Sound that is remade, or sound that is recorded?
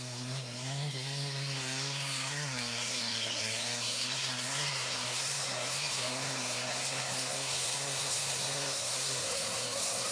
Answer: remade